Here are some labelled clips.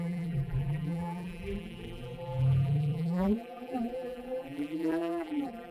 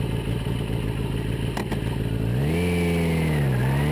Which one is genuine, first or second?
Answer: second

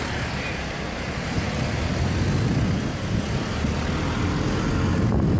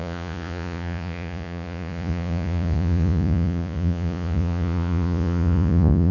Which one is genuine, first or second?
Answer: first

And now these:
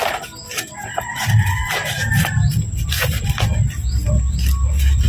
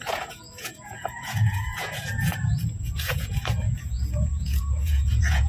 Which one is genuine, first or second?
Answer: first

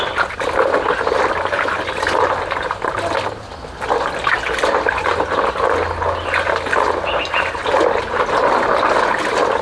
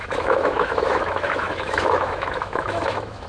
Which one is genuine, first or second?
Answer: first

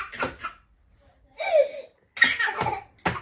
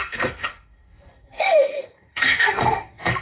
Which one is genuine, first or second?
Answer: first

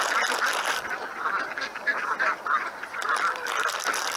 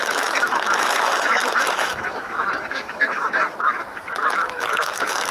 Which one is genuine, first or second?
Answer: first